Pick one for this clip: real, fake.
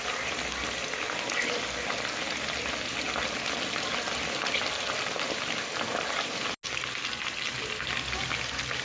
real